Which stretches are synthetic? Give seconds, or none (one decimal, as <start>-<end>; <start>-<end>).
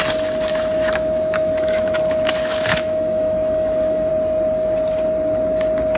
0.5-4.1